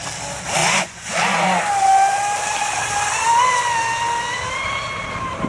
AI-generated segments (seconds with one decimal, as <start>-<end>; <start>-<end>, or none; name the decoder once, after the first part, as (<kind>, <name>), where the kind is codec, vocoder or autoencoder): 0.6-1.6 (vocoder, Vocos)

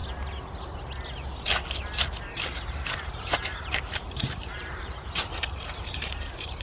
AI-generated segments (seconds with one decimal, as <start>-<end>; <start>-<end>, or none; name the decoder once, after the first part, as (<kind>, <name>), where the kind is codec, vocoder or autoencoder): 2.0-6.6 (vocoder, BigVGAN v2)